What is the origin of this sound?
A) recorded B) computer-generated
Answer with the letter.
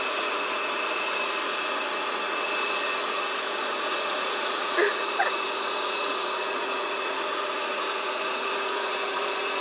B